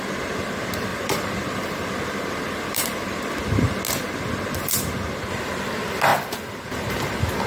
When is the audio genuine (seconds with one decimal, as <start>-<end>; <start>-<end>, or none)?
0.0-0.9; 3.4-6.1; 6.9-7.5